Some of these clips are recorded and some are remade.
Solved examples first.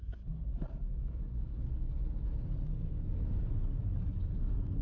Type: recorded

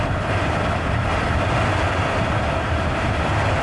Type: recorded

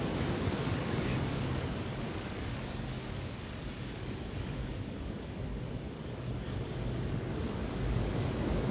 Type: remade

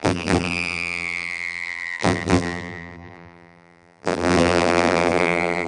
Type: remade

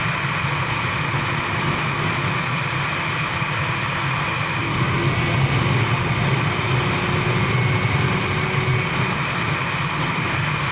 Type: recorded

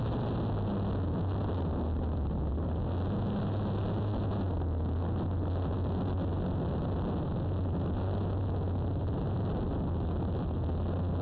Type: recorded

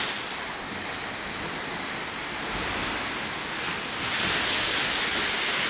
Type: recorded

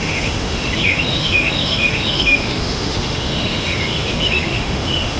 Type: remade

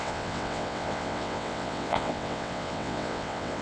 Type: remade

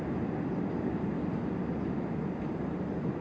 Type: recorded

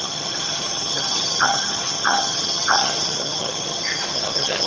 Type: remade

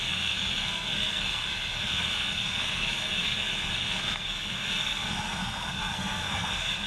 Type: remade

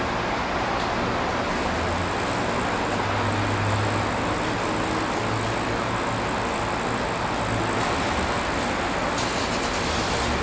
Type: recorded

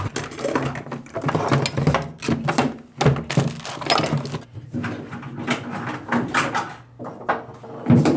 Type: recorded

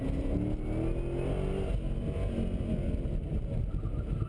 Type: recorded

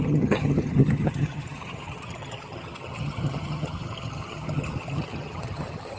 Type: remade